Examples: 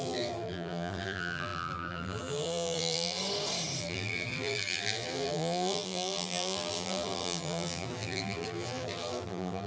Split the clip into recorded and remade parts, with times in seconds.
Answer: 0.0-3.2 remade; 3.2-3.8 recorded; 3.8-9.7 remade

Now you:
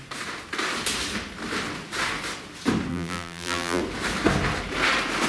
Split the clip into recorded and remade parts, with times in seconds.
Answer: 0.0-2.9 recorded; 2.9-3.8 remade; 3.8-5.3 recorded